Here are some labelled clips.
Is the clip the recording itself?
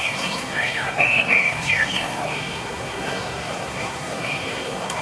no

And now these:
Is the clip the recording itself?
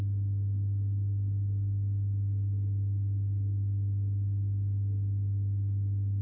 yes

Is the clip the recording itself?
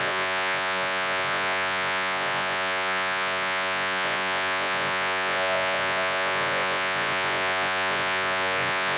no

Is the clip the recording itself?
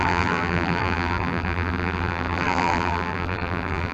no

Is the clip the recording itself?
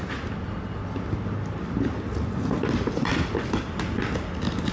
yes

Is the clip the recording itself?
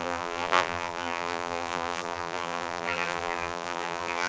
no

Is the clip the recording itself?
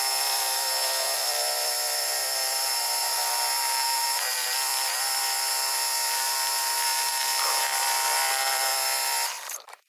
no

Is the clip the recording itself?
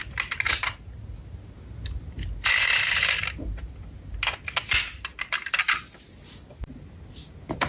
yes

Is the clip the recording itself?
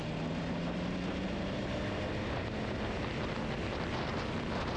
yes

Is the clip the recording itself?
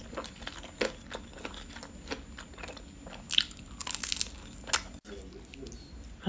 yes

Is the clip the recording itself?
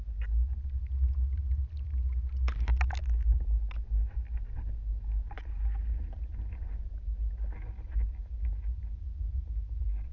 yes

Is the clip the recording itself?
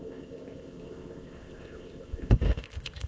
no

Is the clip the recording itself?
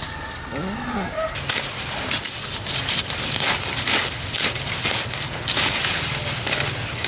yes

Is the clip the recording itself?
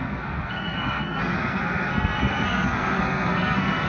no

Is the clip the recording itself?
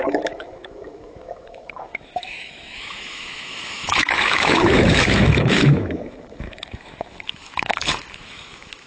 no